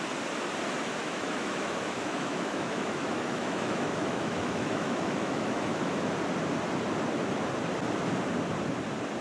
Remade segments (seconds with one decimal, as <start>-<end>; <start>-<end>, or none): 1.0-5.9